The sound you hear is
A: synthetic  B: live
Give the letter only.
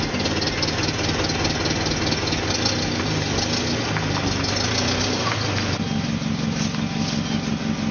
B